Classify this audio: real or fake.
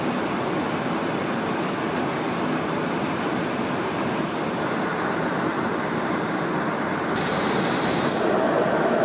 real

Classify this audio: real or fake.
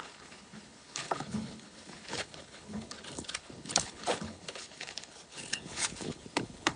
fake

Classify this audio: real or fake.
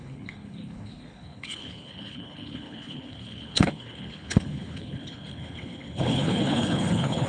fake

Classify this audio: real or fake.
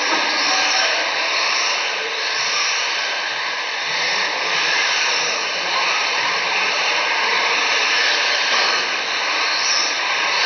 real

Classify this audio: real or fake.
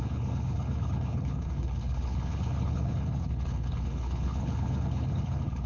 fake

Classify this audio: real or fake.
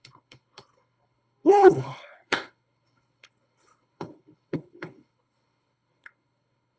fake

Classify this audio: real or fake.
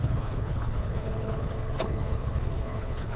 fake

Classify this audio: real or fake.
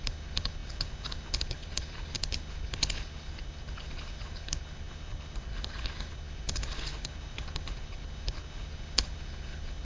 fake